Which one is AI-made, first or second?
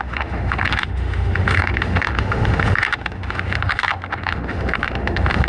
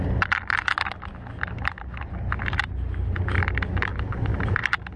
first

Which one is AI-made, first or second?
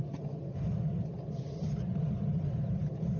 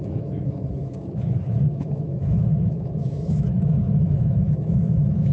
second